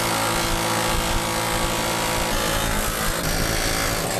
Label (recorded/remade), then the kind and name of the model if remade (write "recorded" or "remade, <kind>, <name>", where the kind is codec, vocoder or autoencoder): recorded